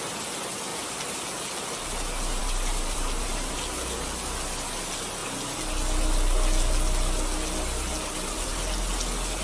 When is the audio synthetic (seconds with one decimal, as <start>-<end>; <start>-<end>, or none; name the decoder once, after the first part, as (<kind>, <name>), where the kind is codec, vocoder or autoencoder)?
0.7-1.2 (vocoder, BigVGAN v2); 2.4-3.5

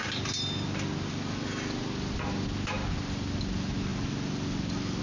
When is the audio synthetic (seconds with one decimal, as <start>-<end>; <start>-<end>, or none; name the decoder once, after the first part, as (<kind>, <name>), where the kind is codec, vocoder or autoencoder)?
none

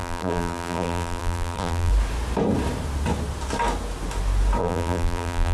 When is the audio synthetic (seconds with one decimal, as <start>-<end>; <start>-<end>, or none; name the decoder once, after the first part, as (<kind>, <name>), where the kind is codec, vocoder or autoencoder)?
0.0-1.9 (vocoder, BigVGAN v2); 4.6-5.5

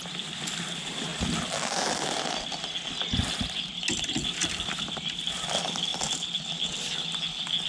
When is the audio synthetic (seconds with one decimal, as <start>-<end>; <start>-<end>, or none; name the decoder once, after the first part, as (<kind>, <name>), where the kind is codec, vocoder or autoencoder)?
4.4-5.2 (vocoder, BigVGAN v2); 5.9-6.7